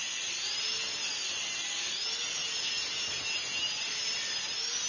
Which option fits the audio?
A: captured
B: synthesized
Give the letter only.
A